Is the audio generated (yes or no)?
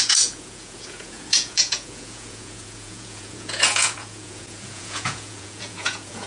yes